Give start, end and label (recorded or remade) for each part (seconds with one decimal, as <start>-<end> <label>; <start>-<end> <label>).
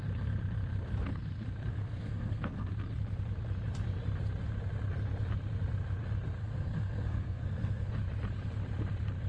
0.0-1.7 recorded; 1.7-2.7 remade; 2.7-6.4 recorded; 6.4-7.9 remade; 7.9-9.3 recorded